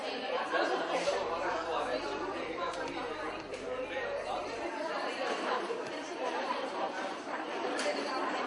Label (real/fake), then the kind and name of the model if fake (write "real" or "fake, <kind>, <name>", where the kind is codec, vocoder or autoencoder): fake, vocoder, BigVGAN v2